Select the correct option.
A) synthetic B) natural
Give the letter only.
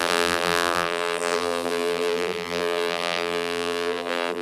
A